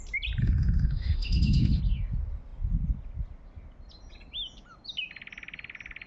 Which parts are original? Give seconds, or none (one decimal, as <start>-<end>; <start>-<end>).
0.0-0.4; 1.8-6.1